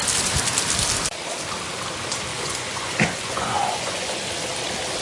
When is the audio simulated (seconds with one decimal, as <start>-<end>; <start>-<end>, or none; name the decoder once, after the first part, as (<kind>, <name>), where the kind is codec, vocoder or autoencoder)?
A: 2.3-4.2 (vocoder, Vocos)